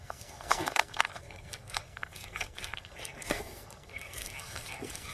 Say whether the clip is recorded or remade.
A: remade